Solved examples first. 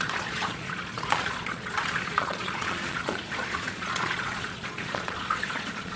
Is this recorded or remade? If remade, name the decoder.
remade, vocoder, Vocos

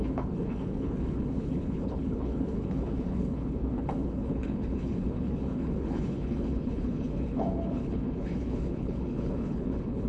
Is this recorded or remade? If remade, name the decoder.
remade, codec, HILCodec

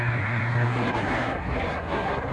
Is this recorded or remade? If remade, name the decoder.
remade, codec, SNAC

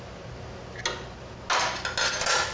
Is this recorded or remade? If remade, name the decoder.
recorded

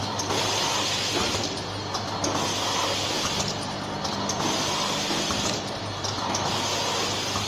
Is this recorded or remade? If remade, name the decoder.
recorded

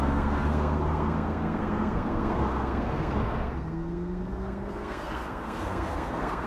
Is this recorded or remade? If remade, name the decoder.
remade, codec, SNAC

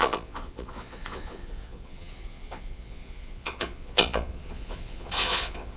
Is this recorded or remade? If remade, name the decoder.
remade, vocoder, Vocos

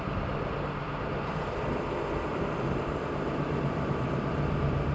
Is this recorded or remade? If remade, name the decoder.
remade, vocoder, BigVGAN v2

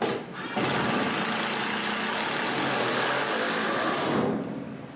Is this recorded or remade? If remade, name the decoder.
recorded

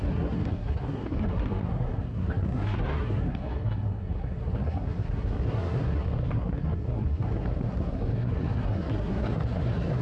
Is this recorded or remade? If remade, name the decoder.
remade, codec, SNAC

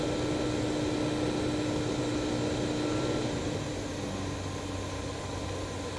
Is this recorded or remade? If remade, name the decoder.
recorded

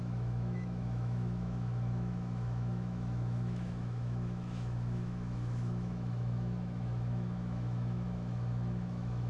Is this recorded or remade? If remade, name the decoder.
remade, autoencoder, DAC-VAE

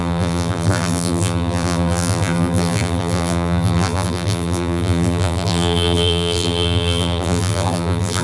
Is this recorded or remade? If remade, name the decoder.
remade, vocoder, BigVGAN v2